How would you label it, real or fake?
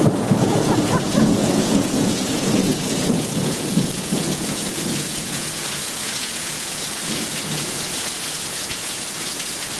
fake